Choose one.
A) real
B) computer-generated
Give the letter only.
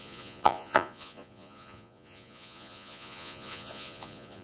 B